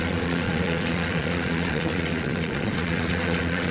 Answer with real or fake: fake